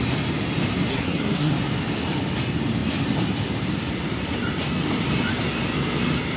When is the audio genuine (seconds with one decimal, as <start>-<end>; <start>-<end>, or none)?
0.0-0.9; 1.5-6.4